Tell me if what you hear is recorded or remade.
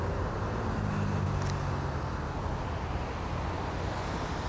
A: recorded